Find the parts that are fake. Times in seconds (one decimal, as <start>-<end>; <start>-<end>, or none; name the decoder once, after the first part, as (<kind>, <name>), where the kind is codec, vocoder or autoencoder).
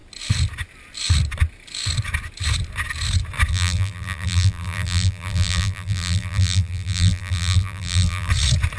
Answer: 3.5-8.3 (vocoder, BigVGAN v2)